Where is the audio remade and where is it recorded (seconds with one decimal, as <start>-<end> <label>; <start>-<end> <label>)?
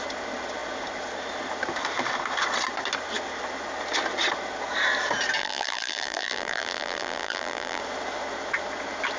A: 0.0-5.4 recorded; 5.4-7.8 remade; 7.8-9.2 recorded